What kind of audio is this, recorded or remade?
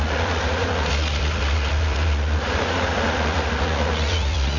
remade